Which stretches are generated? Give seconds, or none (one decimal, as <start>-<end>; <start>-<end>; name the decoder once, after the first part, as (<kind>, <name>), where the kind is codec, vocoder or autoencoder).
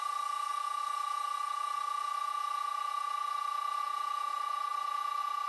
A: none